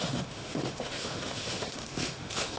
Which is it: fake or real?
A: fake